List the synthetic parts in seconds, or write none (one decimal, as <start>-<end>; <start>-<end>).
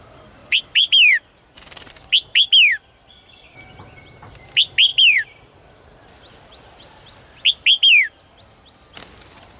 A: 0.4-1.9; 4.9-7.0